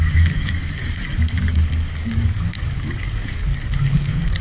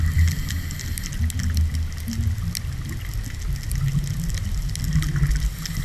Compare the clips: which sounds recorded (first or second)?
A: second